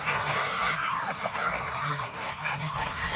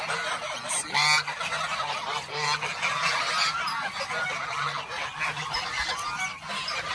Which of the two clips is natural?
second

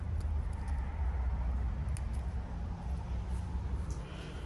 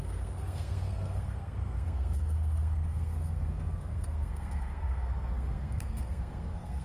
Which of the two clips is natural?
first